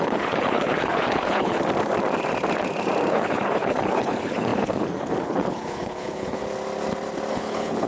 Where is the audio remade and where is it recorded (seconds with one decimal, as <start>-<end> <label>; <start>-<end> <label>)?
0.0-1.6 remade; 1.6-3.1 recorded; 3.1-6.4 remade; 6.4-7.3 recorded; 7.3-7.9 remade